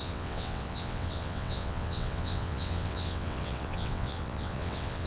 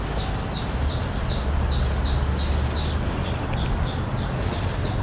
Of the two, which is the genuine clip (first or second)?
second